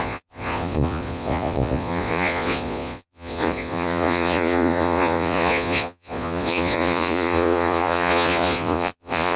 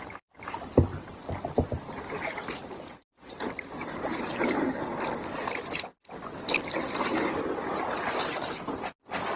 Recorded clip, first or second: second